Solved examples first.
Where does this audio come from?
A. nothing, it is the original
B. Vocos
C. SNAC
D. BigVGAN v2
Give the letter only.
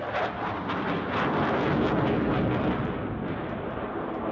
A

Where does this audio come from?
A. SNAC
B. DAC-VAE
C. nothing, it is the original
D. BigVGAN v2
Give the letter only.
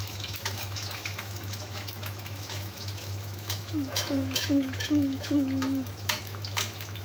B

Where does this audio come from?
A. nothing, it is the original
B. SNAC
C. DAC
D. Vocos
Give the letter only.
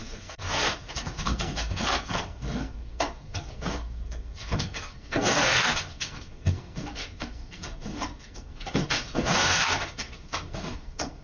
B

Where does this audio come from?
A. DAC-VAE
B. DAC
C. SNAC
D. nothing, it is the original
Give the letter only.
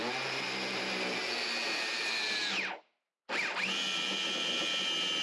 D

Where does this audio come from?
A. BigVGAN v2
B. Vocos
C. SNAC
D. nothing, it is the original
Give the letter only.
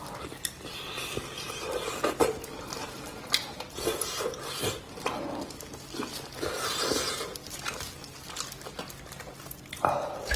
D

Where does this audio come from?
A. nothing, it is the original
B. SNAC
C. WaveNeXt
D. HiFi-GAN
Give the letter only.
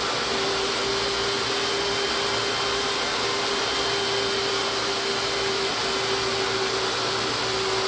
A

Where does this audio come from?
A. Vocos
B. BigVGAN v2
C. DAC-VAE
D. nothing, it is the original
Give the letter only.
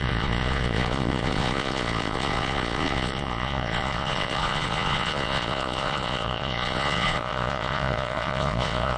A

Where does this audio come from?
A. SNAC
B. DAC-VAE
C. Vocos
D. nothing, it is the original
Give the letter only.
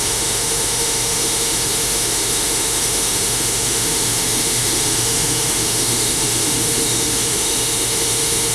B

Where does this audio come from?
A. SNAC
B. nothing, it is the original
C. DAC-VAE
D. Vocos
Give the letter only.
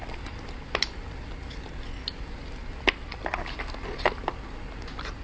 B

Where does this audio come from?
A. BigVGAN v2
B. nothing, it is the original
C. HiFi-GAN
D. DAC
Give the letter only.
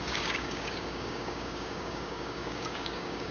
D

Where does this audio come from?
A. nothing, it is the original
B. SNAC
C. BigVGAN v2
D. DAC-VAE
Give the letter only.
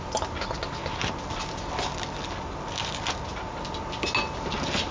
A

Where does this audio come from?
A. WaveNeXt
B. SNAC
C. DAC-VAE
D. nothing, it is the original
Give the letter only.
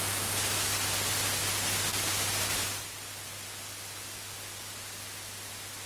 D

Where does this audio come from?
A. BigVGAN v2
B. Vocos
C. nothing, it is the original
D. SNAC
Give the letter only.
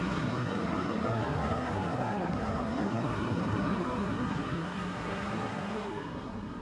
D